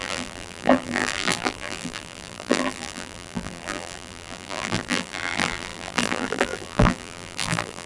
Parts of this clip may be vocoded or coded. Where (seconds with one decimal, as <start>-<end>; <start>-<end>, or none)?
0.0-7.9